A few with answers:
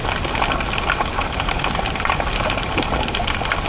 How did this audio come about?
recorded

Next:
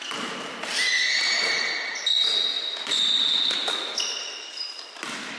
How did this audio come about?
remade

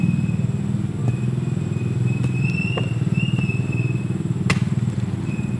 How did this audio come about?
recorded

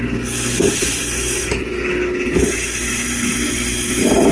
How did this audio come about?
recorded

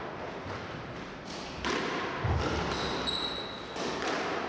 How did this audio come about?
recorded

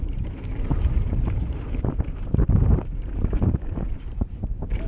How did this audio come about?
remade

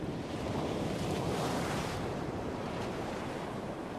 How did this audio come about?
remade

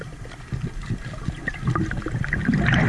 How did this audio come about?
recorded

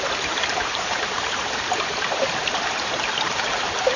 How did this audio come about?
remade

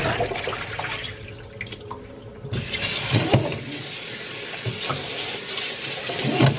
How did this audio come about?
recorded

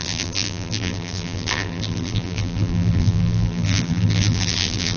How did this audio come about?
remade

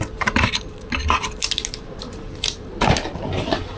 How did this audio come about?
remade